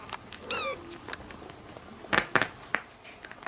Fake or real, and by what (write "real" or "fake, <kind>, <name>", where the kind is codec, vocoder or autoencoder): real